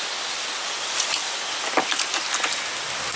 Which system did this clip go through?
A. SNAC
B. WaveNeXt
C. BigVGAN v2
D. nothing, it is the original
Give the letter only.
D